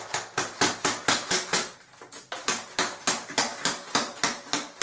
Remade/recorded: recorded